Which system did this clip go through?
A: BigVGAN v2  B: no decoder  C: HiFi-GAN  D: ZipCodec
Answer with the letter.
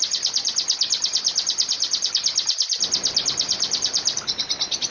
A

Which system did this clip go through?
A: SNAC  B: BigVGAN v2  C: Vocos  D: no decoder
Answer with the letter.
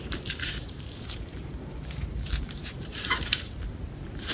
B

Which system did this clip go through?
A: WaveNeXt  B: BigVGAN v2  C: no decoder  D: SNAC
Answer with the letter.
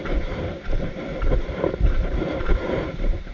B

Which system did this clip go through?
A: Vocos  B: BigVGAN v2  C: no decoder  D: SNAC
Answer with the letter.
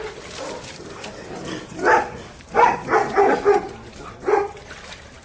C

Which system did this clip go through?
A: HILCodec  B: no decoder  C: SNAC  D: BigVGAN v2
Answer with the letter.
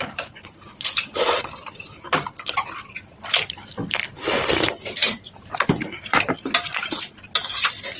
D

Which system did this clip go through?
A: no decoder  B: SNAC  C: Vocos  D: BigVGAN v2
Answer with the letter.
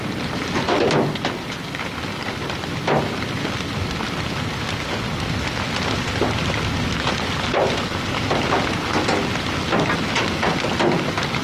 A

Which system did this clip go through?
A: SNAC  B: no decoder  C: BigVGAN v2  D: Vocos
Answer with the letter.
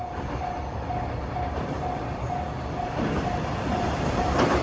C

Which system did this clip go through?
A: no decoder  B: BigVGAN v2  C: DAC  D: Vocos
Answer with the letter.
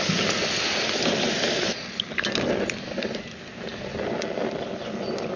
A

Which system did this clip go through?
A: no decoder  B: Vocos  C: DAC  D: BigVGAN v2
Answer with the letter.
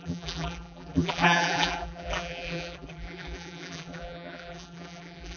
D